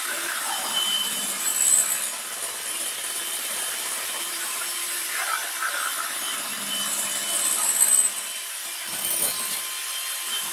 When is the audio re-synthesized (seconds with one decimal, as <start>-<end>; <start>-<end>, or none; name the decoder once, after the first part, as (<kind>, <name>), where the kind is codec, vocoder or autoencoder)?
0.0-1.5 (vocoder, BigVGAN v2); 2.7-5.2; 10.1-10.5